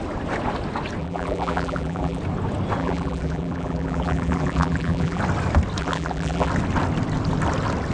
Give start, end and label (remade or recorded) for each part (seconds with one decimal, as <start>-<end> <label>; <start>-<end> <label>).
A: 0.0-1.0 recorded; 1.0-2.2 remade; 2.2-2.8 recorded; 2.8-5.2 remade; 5.2-5.8 recorded; 5.8-6.5 remade; 6.5-7.9 recorded